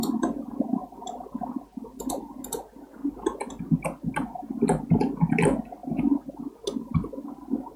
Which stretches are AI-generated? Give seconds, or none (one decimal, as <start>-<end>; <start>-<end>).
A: none